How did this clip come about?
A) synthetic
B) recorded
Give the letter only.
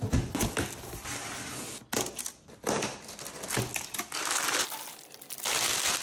B